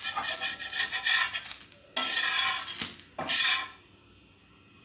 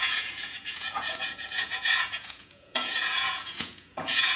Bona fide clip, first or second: first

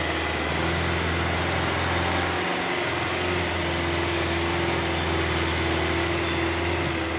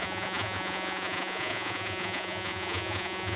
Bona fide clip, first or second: first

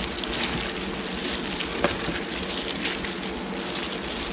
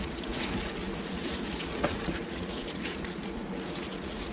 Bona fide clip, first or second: first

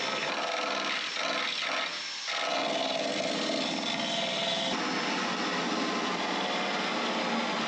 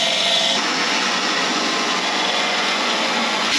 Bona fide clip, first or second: first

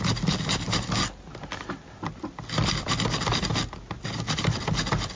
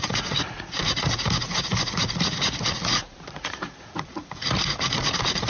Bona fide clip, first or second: first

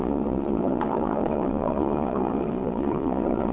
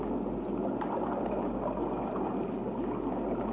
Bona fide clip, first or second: second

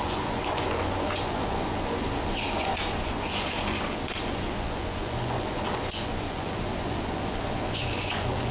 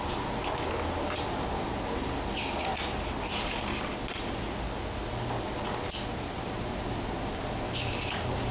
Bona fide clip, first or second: second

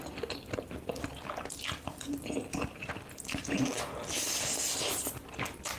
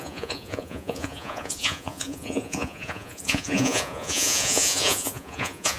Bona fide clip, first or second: first